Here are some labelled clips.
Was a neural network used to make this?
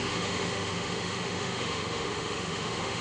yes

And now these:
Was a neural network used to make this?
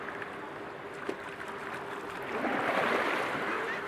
no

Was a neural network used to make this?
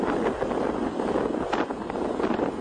no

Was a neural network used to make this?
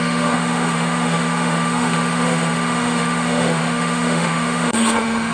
yes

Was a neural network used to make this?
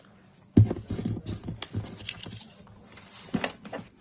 no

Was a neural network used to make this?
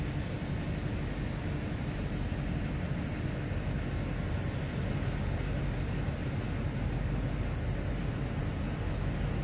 no